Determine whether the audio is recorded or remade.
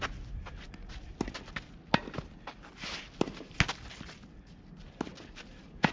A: recorded